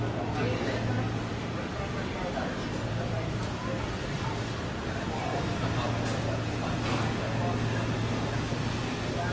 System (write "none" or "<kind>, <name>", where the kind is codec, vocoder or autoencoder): none